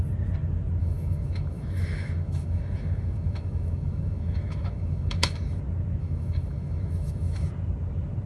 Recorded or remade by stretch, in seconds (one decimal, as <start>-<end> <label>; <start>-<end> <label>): 0.0-0.8 recorded; 0.8-5.6 remade; 5.6-6.0 recorded; 6.0-7.5 remade; 7.5-8.3 recorded